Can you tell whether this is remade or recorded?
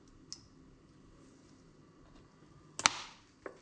recorded